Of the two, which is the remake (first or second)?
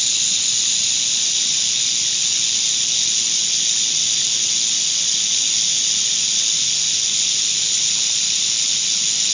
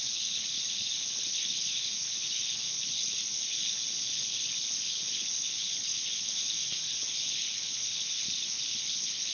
second